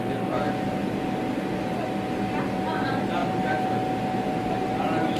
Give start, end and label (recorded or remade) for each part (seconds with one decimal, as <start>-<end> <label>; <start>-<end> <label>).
0.0-0.8 recorded; 0.8-2.4 remade; 2.4-3.2 recorded; 3.2-4.5 remade; 4.5-5.2 recorded